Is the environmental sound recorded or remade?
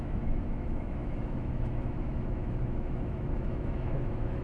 remade